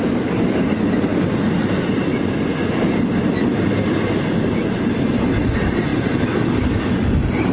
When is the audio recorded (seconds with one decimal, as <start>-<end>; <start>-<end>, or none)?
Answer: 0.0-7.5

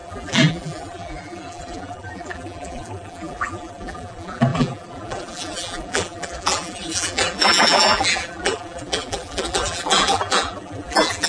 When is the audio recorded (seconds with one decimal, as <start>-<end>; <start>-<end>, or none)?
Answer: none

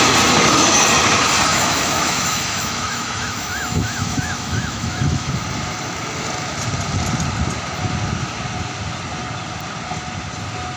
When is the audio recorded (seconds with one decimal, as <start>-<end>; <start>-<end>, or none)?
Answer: 0.0-1.5; 5.3-10.8

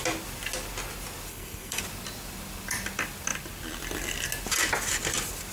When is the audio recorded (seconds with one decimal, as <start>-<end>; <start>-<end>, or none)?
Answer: 0.0-1.3; 1.8-5.5

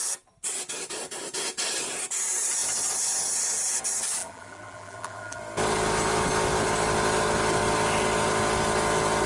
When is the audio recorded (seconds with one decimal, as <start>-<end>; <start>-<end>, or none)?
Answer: 0.0-4.2; 5.4-9.3